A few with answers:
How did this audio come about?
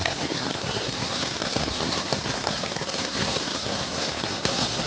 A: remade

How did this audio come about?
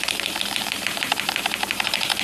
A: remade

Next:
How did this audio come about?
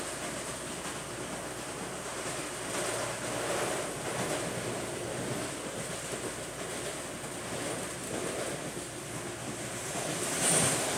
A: recorded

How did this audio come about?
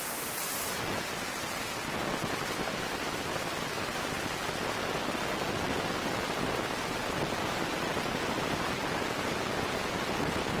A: recorded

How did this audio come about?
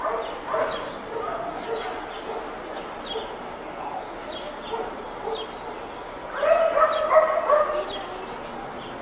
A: recorded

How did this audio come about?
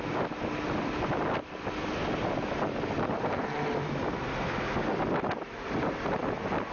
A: recorded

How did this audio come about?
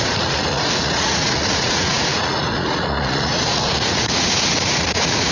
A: remade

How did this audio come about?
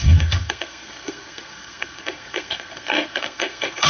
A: remade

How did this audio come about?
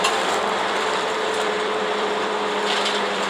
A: remade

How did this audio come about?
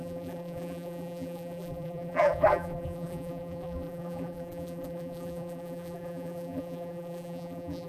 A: remade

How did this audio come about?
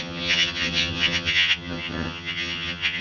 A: remade